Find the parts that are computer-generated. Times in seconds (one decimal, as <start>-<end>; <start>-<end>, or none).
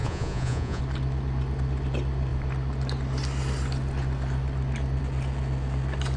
0.0-0.8